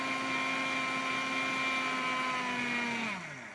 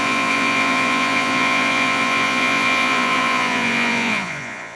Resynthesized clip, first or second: second